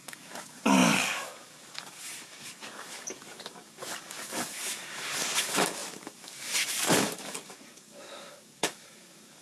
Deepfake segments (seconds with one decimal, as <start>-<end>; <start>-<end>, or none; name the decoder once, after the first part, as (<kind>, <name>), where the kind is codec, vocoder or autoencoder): 0.0-9.4 (codec, DAC)